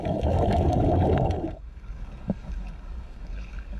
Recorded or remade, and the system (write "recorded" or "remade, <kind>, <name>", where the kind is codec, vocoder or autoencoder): remade, codec, DAC